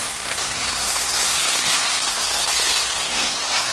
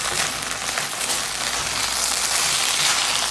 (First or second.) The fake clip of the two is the first